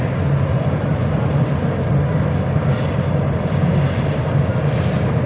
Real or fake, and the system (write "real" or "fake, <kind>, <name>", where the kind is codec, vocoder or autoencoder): real